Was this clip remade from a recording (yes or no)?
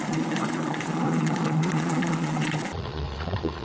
yes